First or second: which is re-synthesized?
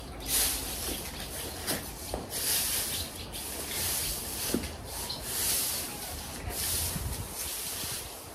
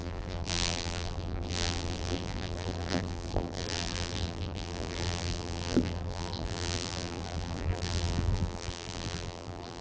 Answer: second